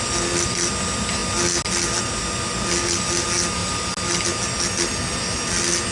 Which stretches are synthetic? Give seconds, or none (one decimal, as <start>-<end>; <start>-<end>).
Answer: none